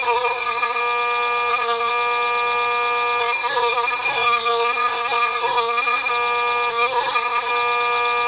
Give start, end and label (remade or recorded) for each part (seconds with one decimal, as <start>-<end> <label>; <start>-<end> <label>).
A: 0.0-0.8 remade; 0.8-1.5 recorded; 1.5-1.9 remade; 1.9-3.2 recorded; 3.2-6.1 remade; 6.1-6.7 recorded; 6.7-7.5 remade; 7.5-8.3 recorded